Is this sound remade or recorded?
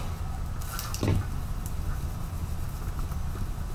recorded